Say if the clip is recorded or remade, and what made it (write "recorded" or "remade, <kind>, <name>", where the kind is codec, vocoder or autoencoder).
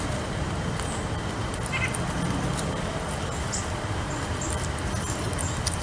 recorded